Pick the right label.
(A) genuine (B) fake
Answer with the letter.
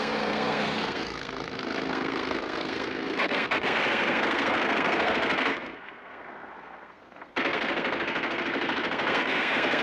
B